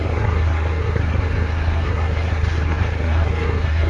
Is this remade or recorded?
remade